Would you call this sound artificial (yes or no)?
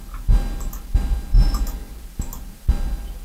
no